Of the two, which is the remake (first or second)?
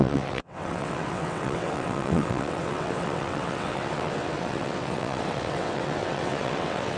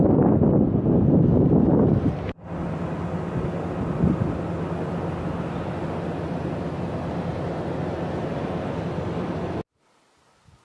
first